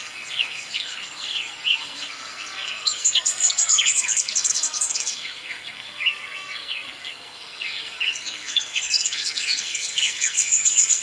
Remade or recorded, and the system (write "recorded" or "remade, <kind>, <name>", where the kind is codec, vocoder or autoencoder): remade, codec, SNAC